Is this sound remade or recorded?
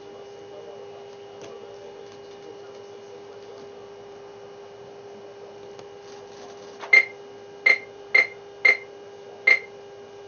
recorded